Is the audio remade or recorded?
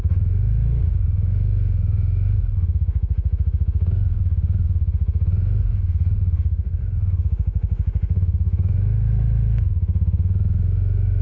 remade